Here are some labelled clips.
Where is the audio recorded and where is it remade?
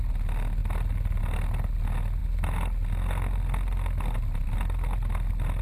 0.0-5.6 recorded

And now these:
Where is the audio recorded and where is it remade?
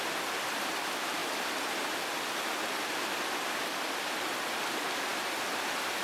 0.0-6.0 recorded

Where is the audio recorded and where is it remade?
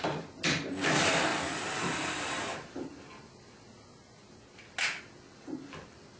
0.0-6.2 recorded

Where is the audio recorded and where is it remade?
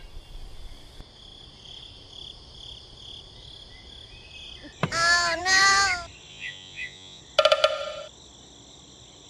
0.0-6.3 recorded; 6.3-7.2 remade; 7.2-9.3 recorded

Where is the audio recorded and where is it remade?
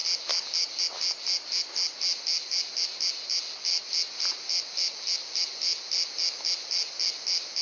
0.0-7.6 recorded